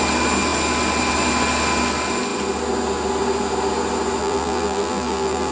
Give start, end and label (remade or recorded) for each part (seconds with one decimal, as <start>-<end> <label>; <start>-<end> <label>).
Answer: 0.0-4.2 recorded; 4.2-5.5 remade